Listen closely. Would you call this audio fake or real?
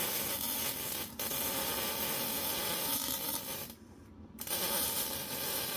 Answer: fake